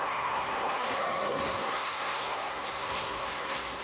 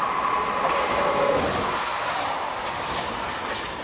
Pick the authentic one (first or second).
second